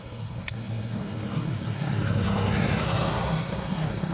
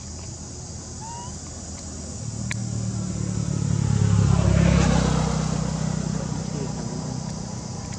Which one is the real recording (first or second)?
second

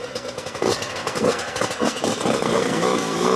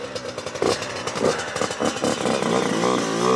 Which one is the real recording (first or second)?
second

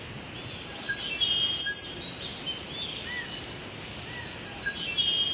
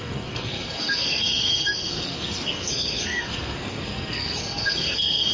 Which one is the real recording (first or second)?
first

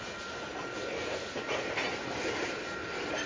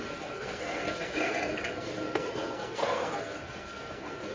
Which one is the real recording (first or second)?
first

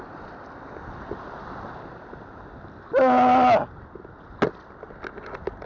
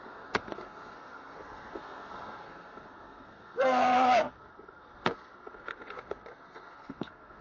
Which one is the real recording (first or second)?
first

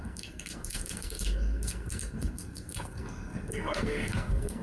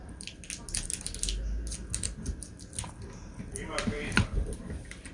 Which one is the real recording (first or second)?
second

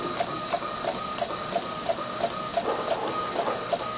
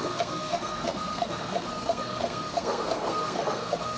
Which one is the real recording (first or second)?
first